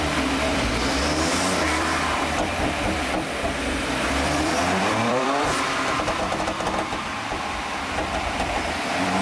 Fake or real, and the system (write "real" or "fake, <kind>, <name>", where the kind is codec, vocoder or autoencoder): fake, vocoder, BigVGAN v2